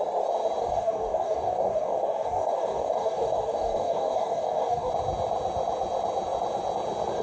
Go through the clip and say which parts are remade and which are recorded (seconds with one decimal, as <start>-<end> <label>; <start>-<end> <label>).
0.0-0.6 recorded; 0.6-4.9 remade; 4.9-7.2 recorded